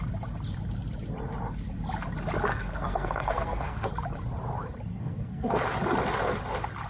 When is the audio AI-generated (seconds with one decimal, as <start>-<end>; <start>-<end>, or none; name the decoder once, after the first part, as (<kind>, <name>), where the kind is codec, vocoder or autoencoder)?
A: 2.5-3.9 (codec, SNAC); 4.9-5.6